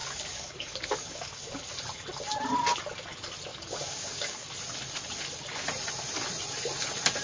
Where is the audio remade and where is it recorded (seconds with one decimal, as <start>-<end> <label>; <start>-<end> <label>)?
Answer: 0.0-1.7 remade; 1.7-3.5 recorded; 3.5-4.5 remade; 4.5-7.2 recorded